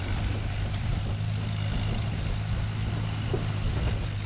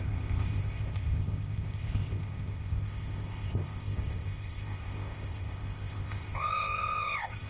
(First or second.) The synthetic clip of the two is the second